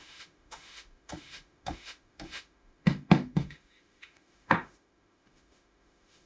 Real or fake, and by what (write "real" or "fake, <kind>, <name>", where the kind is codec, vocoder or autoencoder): fake, autoencoder, DAC-VAE